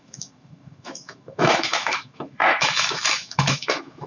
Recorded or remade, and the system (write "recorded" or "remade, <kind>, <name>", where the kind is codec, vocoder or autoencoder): remade, autoencoder, DAC-VAE